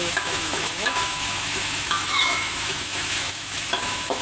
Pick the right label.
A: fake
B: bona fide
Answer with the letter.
A